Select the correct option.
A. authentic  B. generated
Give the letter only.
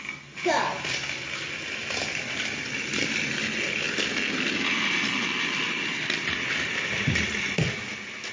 A